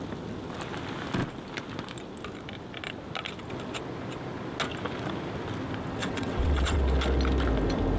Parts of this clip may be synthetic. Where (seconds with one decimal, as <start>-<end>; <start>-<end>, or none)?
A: 6.0-6.8